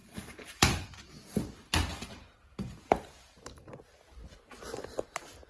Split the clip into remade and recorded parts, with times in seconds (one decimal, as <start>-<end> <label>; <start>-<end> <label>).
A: 0.0-1.1 remade; 1.1-1.9 recorded; 1.9-3.7 remade; 3.7-5.5 recorded